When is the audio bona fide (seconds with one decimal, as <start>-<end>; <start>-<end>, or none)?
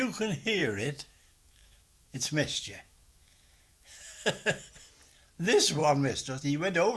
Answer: 0.0-0.6; 4.6-7.0